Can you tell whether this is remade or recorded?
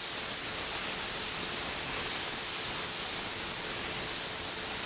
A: recorded